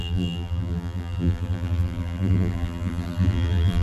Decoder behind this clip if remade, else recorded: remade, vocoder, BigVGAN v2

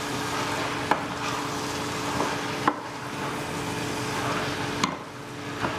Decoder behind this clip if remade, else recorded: recorded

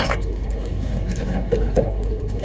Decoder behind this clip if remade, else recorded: remade, codec, SNAC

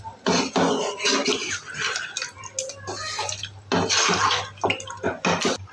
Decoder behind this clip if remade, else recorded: recorded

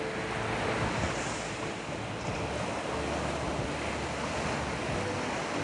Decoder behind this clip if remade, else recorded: recorded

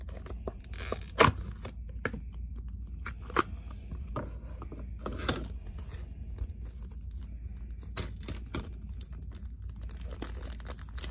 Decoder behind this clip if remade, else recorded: recorded